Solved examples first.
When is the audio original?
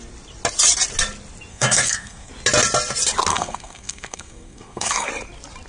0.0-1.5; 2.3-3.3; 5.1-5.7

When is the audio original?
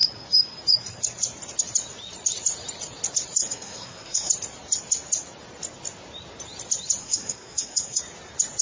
0.0-3.4; 4.3-7.0; 8.0-8.6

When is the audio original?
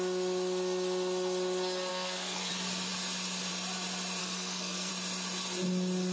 0.0-1.9; 2.5-4.2; 4.9-6.1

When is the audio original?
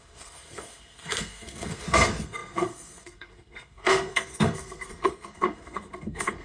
none